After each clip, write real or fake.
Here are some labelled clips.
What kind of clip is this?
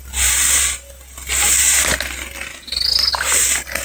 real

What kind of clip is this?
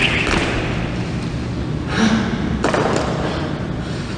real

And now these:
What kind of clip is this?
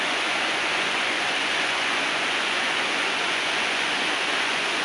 fake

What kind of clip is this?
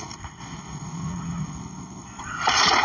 fake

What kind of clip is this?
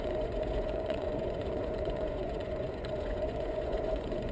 fake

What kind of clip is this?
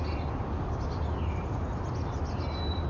real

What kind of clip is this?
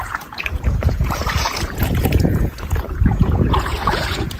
fake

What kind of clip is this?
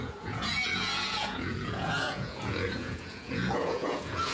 fake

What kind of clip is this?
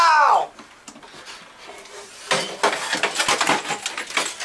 real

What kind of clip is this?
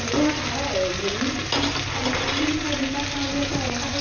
real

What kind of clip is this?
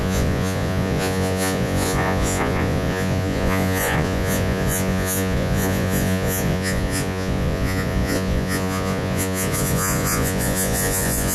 fake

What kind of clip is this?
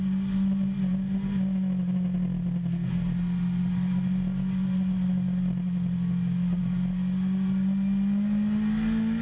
real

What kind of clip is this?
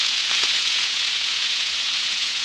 fake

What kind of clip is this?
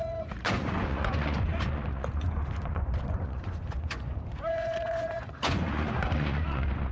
fake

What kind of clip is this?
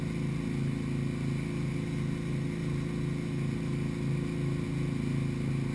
real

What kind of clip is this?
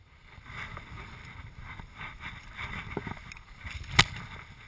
real